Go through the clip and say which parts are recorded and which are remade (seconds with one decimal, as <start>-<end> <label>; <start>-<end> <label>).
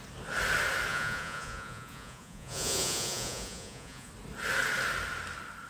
0.0-0.9 recorded; 0.9-4.1 remade; 4.1-5.7 recorded